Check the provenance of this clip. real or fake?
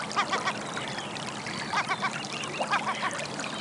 real